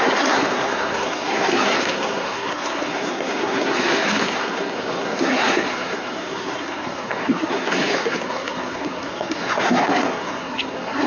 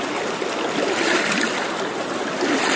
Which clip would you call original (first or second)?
second